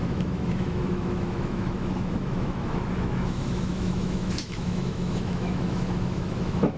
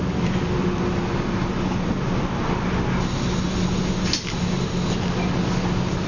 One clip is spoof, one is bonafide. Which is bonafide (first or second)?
second